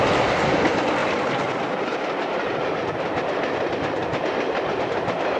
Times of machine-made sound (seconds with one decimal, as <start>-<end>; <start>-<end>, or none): none

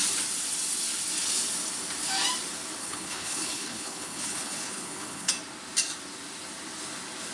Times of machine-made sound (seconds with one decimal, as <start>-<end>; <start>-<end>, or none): 2.8-5.3

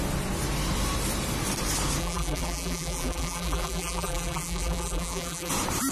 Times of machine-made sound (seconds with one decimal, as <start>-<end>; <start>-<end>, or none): 2.0-5.5

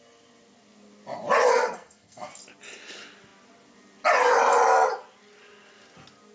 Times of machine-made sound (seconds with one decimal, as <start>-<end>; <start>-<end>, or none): 1.5-2.3

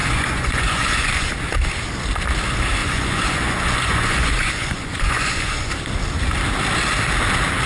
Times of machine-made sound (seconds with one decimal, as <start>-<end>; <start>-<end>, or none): 0.0-1.3; 2.8-5.7